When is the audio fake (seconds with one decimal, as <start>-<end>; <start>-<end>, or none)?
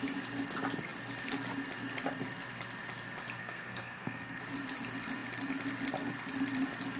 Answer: 3.4-4.4